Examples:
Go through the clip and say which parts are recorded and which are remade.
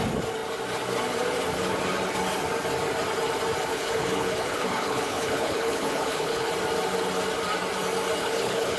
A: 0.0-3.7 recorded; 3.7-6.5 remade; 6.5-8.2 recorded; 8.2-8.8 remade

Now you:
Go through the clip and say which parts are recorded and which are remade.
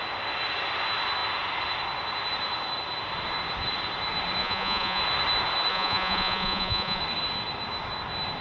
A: 0.0-4.4 recorded; 4.4-5.0 remade; 5.0-5.7 recorded; 5.7-7.0 remade; 7.0-8.4 recorded